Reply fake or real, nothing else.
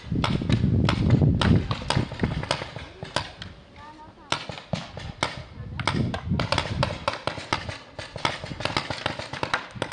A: real